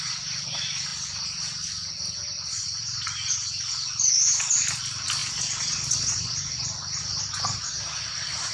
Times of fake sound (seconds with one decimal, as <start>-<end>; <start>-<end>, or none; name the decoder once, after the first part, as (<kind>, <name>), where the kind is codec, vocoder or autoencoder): none